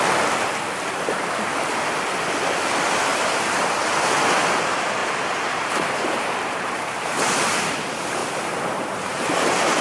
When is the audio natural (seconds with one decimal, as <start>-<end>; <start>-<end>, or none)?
0.0-3.1; 4.6-5.0; 7.7-8.2; 9.2-9.8

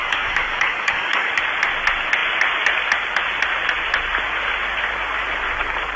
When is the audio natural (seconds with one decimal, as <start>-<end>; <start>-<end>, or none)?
1.3-6.0

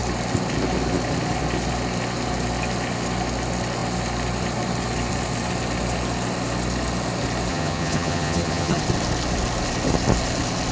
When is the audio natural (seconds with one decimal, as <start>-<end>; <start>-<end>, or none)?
0.0-7.5; 8.8-10.7

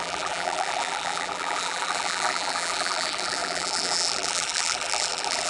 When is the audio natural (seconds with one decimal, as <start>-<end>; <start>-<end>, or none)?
none

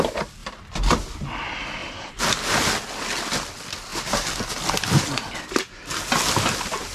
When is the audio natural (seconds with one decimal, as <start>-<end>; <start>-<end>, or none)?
0.0-1.8; 2.3-3.9; 6.0-6.9

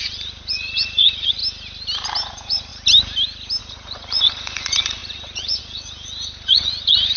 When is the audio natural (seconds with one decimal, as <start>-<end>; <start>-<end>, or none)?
1.4-2.3; 2.7-3.6

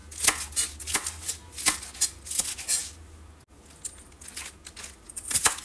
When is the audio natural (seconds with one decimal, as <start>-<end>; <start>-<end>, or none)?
0.0-5.6